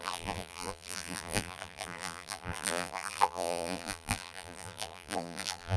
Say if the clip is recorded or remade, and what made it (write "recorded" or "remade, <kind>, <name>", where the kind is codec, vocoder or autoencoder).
remade, vocoder, BigVGAN v2